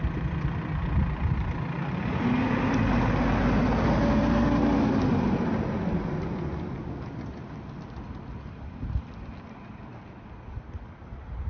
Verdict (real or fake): real